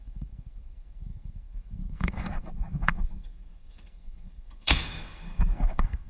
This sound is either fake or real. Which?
fake